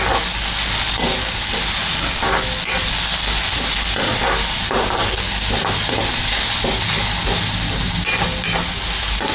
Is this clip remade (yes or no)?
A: no